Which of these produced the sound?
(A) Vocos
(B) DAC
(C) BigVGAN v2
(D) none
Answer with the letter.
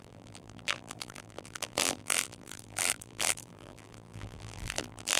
C